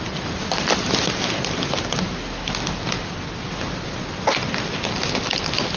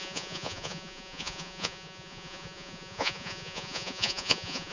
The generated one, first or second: second